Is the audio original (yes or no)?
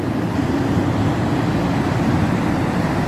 yes